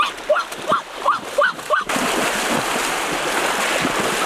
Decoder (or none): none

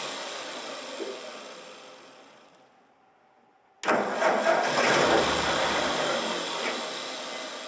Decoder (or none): none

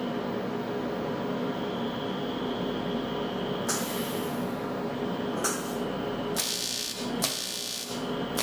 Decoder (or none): none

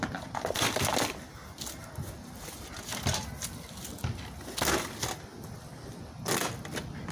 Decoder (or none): none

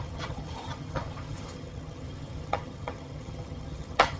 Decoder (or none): vocoder, HiFi-GAN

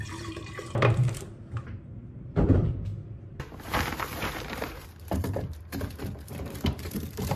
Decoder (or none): vocoder, BigVGAN v2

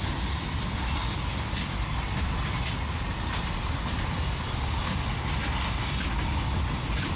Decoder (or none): none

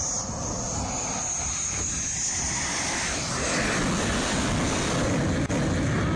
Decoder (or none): none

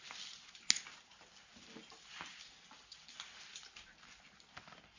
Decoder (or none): none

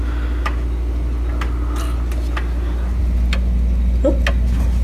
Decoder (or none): none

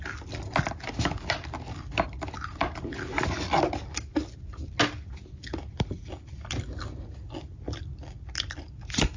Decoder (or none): none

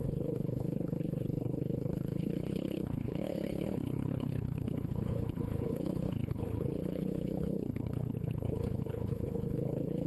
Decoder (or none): codec, HILCodec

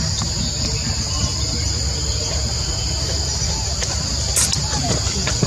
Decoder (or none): none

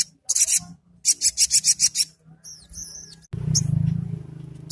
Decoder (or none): none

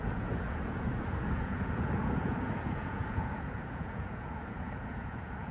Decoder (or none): vocoder, Vocos